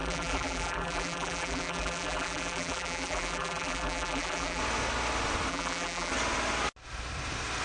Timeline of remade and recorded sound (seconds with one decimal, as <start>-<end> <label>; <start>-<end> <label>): 0.0-4.6 remade; 4.6-5.5 recorded; 5.5-6.1 remade; 6.1-7.6 recorded